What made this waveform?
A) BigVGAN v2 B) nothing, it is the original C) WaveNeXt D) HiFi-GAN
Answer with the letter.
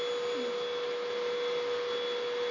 B